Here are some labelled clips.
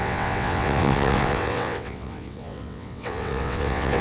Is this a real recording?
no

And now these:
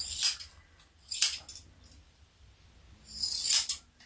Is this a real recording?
yes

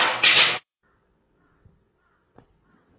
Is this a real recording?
no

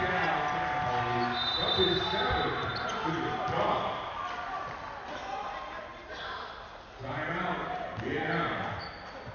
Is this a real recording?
yes